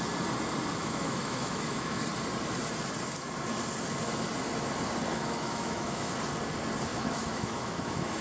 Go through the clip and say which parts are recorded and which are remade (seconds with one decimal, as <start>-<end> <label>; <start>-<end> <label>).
0.0-0.8 recorded; 0.8-2.0 remade; 2.0-5.1 recorded; 5.1-6.1 remade; 6.1-6.9 recorded; 6.9-8.2 remade